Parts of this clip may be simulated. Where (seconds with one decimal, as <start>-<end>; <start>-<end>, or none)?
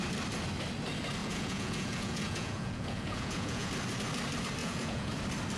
1.2-3.7; 4.6-5.1